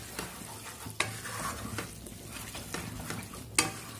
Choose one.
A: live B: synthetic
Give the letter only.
A